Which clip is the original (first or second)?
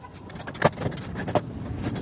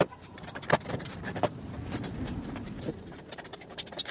first